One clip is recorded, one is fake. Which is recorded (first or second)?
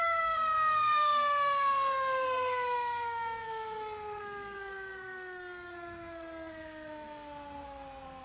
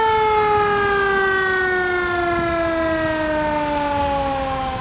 second